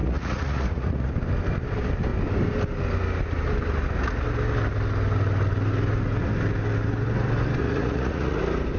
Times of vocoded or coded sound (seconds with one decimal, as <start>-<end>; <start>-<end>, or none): 0.0-1.1; 7.6-8.4